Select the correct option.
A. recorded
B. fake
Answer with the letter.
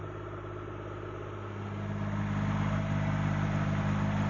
A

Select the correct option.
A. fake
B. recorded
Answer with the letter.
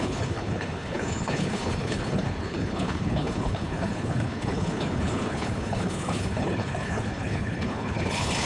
A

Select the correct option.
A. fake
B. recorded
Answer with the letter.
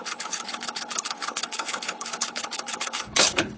A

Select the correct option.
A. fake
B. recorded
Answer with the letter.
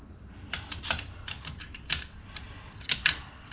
B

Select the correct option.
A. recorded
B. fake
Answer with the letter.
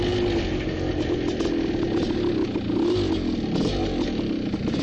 A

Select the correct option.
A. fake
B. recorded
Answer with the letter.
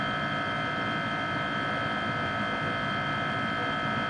B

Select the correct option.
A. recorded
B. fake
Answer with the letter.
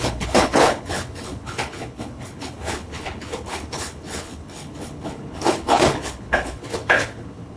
B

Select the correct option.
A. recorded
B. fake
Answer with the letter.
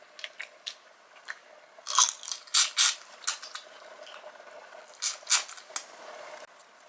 A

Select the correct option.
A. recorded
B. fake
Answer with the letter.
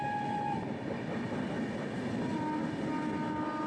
A